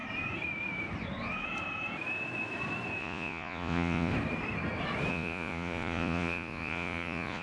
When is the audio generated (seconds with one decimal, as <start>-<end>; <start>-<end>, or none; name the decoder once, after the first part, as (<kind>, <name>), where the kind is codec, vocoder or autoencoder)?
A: 3.0-4.1 (vocoder, Vocos); 5.1-7.4